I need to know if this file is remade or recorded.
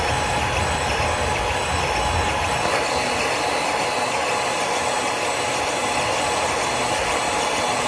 recorded